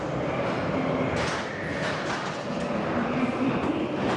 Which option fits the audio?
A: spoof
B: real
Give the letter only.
B